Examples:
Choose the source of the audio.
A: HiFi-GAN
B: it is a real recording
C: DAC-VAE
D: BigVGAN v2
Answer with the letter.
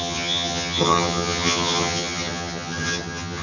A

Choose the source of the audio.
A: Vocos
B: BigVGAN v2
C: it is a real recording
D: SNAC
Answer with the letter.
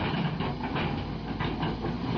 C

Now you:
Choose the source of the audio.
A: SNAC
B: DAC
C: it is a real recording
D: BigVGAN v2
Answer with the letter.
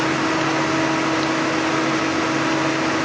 C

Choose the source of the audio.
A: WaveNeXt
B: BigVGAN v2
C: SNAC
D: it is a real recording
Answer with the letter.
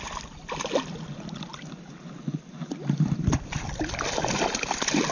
D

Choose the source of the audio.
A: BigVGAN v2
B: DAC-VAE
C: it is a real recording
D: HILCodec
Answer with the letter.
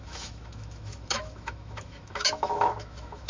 B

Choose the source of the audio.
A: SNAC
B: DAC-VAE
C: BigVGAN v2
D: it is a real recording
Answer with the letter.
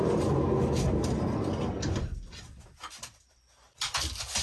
D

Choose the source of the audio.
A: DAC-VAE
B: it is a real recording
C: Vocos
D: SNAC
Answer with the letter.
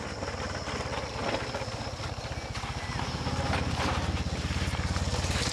B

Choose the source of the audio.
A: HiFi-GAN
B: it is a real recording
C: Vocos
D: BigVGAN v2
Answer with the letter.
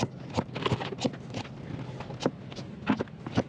B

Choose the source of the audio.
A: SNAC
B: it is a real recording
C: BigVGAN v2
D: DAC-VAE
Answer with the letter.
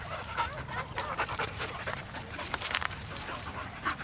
C